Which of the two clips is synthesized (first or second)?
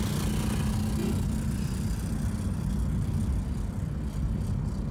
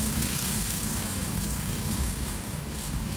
second